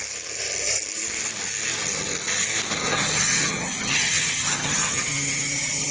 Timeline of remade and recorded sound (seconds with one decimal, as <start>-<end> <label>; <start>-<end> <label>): 0.0-2.9 recorded; 2.9-5.9 remade